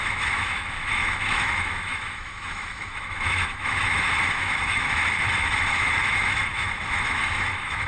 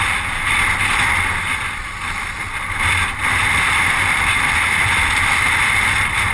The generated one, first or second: first